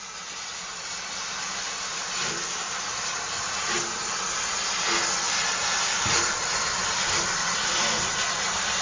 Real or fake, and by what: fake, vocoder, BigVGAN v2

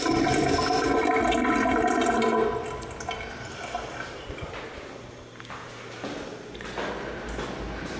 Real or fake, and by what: real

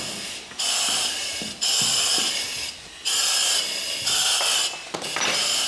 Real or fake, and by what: real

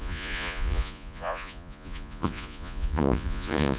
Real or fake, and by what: fake, vocoder, Vocos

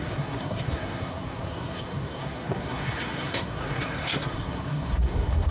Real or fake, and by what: fake, codec, SNAC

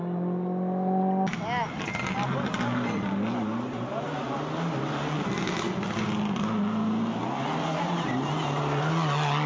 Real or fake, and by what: real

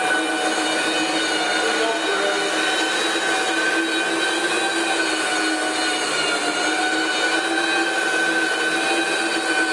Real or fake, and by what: real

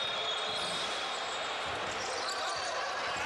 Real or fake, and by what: real